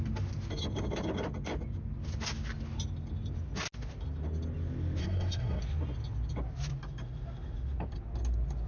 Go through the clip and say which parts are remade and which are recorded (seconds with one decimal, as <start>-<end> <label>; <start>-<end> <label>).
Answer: 0.0-5.0 recorded; 5.0-5.6 remade; 5.6-8.7 recorded